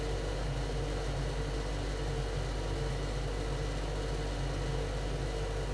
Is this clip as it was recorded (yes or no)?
yes